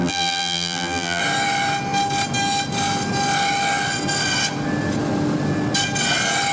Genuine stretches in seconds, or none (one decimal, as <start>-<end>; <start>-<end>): 1.2-6.5